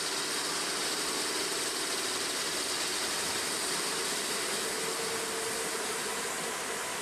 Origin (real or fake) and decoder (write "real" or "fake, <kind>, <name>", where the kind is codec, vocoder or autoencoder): real